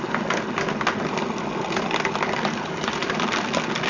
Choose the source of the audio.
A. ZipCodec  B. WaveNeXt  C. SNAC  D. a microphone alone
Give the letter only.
D